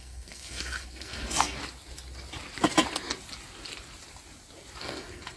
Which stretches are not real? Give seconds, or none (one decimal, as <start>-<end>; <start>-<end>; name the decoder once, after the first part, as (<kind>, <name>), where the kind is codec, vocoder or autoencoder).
0.0-1.6 (codec, SNAC); 4.8-5.4